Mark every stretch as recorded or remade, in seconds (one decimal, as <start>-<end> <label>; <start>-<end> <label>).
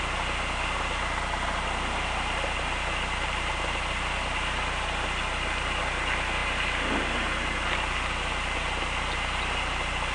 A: 0.0-10.1 recorded